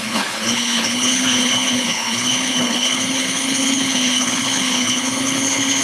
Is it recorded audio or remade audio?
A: remade